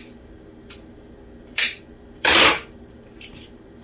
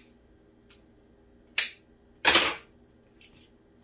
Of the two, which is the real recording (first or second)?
second